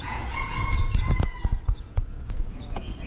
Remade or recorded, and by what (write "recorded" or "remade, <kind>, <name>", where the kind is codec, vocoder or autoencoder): remade, vocoder, Vocos